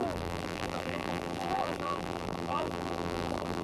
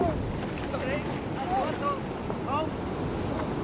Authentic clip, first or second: second